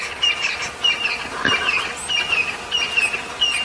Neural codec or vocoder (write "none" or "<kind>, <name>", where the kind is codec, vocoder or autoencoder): none